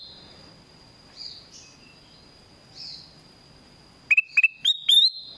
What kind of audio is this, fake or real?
real